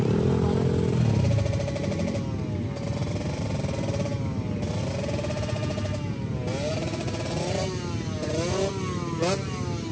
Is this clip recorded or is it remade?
recorded